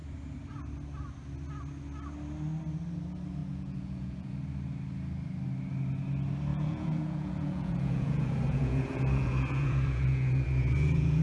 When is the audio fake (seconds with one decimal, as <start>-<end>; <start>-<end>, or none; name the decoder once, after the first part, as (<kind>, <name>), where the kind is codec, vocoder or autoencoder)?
3.4-4.3 (vocoder, Vocos); 6.5-11.2